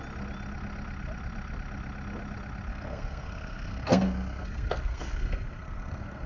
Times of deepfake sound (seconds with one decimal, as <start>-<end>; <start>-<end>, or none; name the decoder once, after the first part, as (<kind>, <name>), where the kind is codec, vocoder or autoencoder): 2.7-6.3 (codec, SNAC)